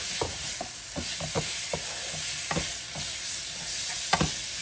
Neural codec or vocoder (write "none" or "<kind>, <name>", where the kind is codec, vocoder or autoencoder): none